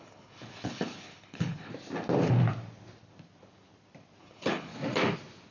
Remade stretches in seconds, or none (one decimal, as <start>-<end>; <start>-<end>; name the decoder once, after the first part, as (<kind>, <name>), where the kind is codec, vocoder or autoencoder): 0.0-1.7 (codec, HILCodec); 4.2-4.7